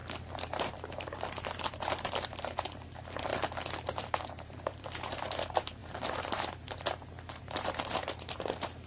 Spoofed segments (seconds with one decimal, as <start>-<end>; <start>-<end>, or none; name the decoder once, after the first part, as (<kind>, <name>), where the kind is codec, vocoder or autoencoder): 0.6-3.3 (vocoder, BigVGAN v2); 4.0-8.9